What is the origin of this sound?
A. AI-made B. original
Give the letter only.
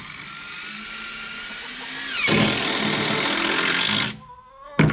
B